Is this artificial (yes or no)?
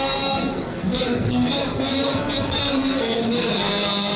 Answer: yes